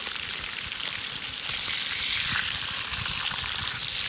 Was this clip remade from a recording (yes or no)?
no